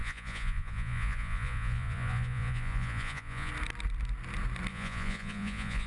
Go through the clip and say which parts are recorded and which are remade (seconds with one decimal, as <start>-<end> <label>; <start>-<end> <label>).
0.0-3.5 remade; 3.5-4.7 recorded; 4.7-5.9 remade